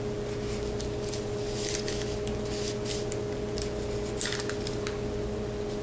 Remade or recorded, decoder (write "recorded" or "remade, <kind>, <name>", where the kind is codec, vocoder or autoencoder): recorded